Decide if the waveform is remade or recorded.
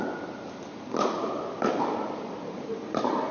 recorded